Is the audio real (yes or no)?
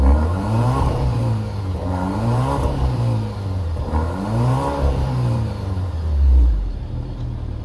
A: no